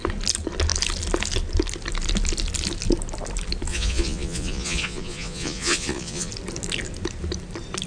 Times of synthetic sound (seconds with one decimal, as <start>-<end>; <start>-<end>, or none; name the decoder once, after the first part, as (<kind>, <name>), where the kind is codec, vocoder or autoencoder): 3.7-6.3 (vocoder, Vocos)

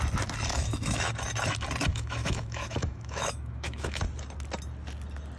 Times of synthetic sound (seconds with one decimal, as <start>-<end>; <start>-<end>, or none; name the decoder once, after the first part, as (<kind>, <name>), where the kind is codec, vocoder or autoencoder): 0.5-1.1 (autoencoder, DAC-VAE); 1.9-4.0

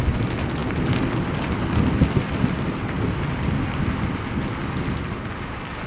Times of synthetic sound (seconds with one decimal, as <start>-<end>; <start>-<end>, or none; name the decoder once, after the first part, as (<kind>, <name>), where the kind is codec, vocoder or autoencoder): none

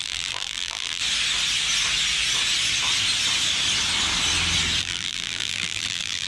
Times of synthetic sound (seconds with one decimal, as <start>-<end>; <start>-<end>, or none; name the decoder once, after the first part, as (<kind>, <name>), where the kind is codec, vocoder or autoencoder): 0.0-1.0 (vocoder, BigVGAN v2); 4.8-6.3